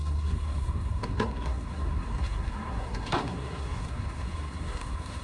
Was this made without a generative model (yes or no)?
no